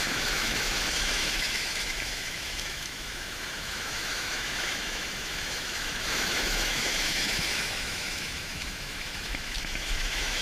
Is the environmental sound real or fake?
fake